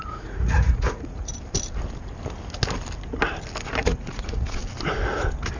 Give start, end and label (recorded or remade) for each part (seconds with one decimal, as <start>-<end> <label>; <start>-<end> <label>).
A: 0.0-1.3 remade; 1.3-3.8 recorded; 3.8-4.6 remade; 4.6-5.6 recorded